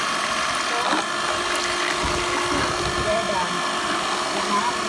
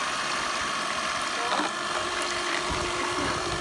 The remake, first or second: second